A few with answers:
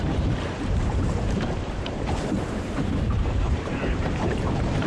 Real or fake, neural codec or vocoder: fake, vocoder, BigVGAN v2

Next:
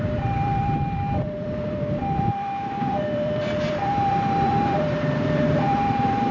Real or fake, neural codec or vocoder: fake, vocoder, BigVGAN v2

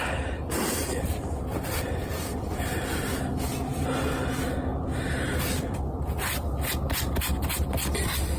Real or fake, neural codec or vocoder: real